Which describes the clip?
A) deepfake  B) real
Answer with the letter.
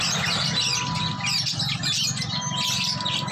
B